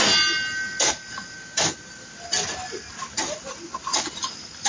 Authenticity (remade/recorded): recorded